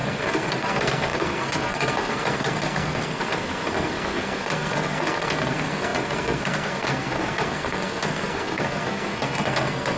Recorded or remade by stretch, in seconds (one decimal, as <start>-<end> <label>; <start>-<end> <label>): 0.0-10.0 remade